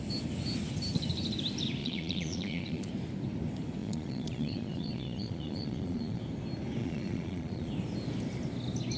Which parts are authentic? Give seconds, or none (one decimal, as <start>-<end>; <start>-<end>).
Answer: 0.0-1.8; 2.9-3.8; 6.2-6.8; 7.7-9.0